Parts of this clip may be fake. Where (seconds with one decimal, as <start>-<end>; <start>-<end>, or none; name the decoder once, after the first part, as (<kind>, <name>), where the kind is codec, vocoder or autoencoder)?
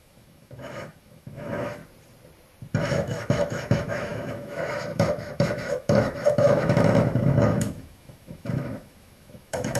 0.0-1.8 (autoencoder, DAC-VAE); 2.8-9.8